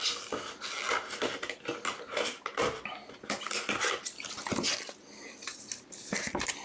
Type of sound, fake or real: real